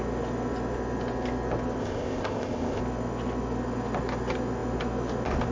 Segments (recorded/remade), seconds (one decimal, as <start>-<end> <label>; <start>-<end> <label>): 0.0-1.8 recorded; 1.8-2.8 remade; 2.8-5.5 recorded